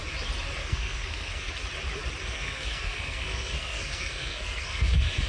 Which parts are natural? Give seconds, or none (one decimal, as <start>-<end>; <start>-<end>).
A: 0.0-0.6; 1.5-2.2